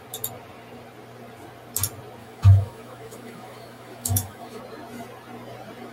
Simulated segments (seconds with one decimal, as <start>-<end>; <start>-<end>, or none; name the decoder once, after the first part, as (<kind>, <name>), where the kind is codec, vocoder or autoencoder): 2.2-4.6 (autoencoder, DAC-VAE)